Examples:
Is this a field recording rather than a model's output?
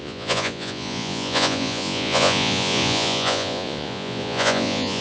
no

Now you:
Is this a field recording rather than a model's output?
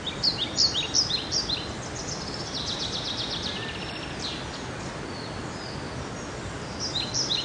yes